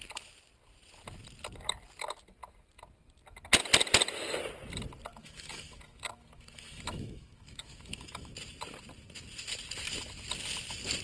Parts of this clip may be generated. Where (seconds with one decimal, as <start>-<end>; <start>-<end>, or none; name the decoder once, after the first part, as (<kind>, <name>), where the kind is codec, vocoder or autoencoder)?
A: 5.1-8.3 (autoencoder, DAC-VAE)